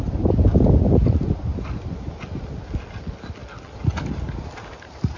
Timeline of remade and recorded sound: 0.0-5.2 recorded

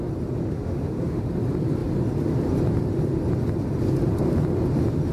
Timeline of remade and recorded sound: 0.0-0.4 recorded; 0.4-1.3 remade; 1.3-5.1 recorded

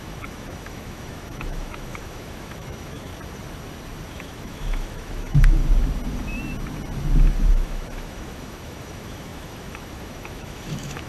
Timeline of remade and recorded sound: 0.0-3.1 remade; 3.1-4.1 recorded; 4.1-5.6 remade; 5.6-7.5 recorded; 7.5-11.1 remade

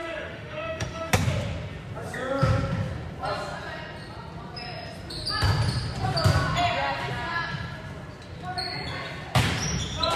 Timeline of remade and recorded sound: 0.0-1.1 remade; 1.1-10.2 recorded

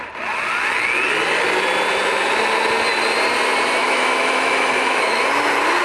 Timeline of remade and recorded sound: 0.0-3.8 recorded; 3.8-5.2 remade; 5.2-5.8 recorded

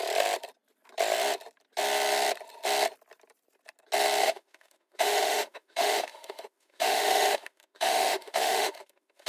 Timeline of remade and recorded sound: 0.0-4.2 recorded; 4.2-9.3 remade